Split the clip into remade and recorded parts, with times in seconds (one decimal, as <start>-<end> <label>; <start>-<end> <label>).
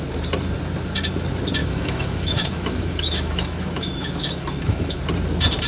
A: 0.0-1.6 recorded; 1.6-5.0 remade; 5.0-5.7 recorded